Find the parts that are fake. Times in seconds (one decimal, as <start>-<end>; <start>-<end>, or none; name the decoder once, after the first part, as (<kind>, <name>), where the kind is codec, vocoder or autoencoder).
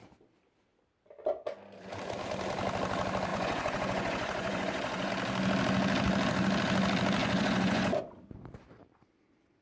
3.3-5.1 (vocoder, Vocos); 7.2-8.0